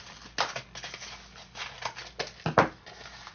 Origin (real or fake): real